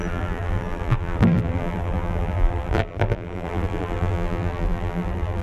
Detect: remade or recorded remade